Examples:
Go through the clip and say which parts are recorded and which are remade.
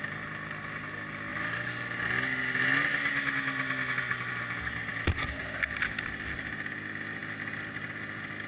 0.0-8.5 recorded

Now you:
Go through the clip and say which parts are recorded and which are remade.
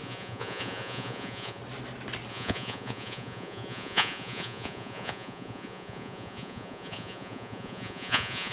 0.0-1.6 remade; 1.6-2.3 recorded; 2.3-8.5 remade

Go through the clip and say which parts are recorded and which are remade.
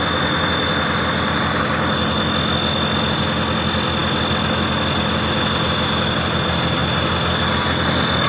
0.0-8.3 recorded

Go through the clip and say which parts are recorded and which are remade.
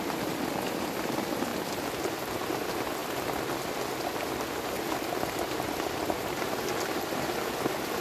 0.0-8.0 recorded